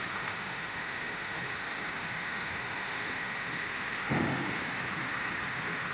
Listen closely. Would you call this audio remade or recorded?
remade